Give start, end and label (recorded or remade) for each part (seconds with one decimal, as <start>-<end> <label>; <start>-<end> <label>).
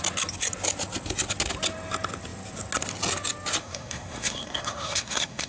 0.0-3.6 recorded; 3.6-5.5 remade